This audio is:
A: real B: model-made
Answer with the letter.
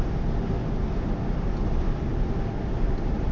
A